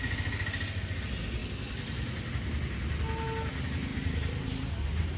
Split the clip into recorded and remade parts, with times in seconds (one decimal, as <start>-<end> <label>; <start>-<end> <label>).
0.0-3.9 recorded; 3.9-5.2 remade